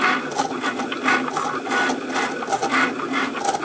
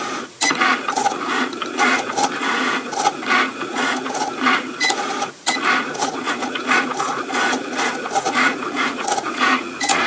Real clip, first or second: first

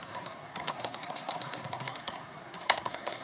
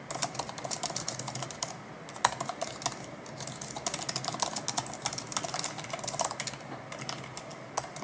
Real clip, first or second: second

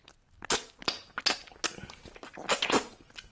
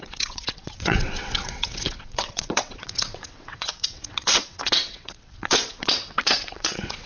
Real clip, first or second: first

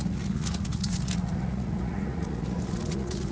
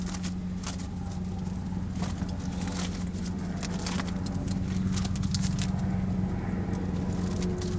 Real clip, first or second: second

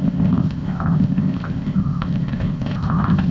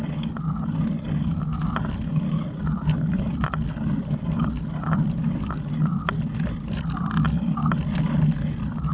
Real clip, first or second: second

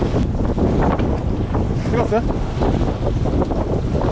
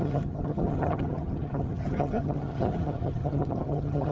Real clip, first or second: first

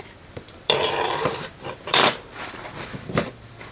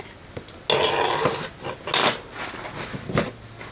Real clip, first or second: second